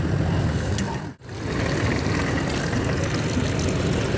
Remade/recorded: recorded